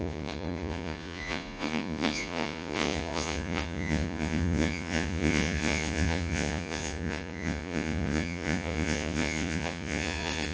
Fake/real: fake